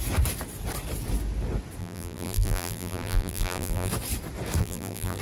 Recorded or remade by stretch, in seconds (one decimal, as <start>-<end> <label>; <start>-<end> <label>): 0.0-1.8 recorded; 1.8-3.9 remade; 3.9-4.6 recorded; 4.6-5.2 remade